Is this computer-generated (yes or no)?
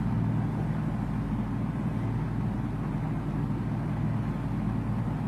no